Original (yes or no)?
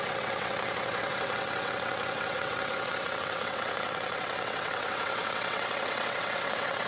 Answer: no